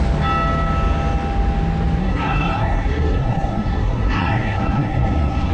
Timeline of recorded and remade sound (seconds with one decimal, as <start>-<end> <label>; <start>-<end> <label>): 0.0-2.0 recorded; 2.0-5.5 remade